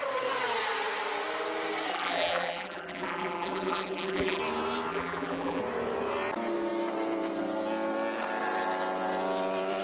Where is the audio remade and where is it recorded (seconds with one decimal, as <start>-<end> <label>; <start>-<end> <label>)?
0.0-1.9 recorded; 1.9-4.4 remade; 4.4-4.9 recorded; 4.9-5.6 remade; 5.6-9.8 recorded